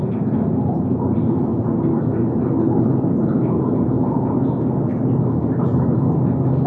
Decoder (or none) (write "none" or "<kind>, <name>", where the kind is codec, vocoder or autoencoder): none